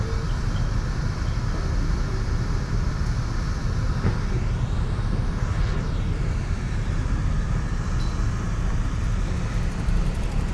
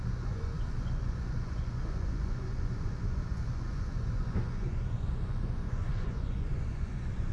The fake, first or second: second